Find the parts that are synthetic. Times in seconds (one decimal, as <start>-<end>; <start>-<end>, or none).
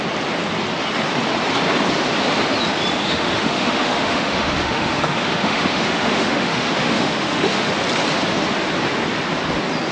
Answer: 3.0-7.7